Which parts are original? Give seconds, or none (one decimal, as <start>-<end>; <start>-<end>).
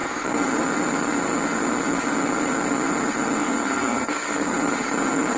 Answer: 0.0-3.4; 4.5-5.4